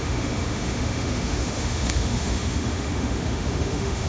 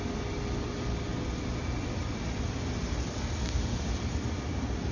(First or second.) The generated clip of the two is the first